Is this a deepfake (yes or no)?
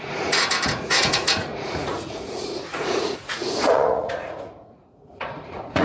yes